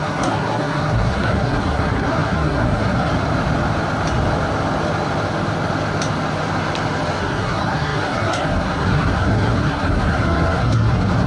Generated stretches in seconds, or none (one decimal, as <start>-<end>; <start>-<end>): 0.0-3.1; 7.2-11.3